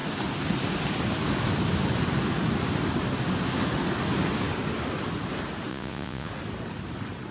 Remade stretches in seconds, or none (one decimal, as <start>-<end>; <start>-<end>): 5.7-6.3